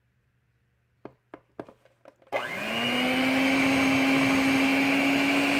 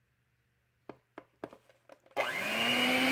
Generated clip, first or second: second